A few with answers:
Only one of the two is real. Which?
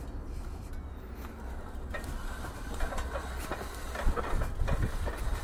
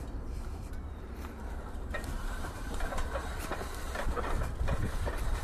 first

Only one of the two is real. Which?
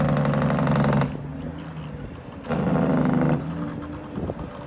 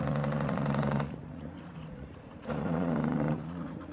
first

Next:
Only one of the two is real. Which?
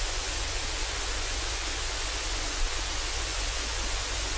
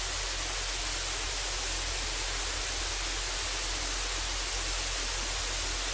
second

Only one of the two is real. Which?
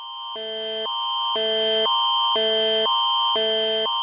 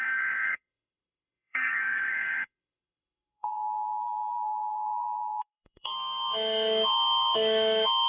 first